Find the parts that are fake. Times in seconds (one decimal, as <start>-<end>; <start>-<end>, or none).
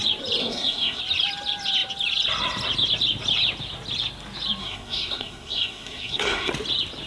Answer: 0.4-1.0; 4.6-6.5